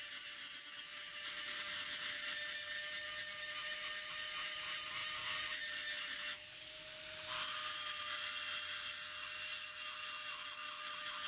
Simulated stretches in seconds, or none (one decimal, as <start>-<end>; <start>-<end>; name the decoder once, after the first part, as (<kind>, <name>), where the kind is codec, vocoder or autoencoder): none

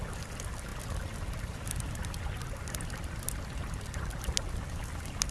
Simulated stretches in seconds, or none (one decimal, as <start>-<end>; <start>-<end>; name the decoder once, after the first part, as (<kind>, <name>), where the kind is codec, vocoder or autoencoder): none

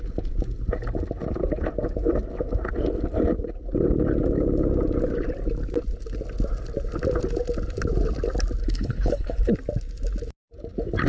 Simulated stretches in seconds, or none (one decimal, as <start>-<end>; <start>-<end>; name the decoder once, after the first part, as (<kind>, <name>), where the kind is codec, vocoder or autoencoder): 8.6-9.5 (codec, HILCodec)